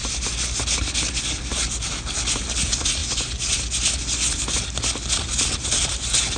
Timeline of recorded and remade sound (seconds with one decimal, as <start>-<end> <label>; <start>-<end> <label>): 0.0-6.4 recorded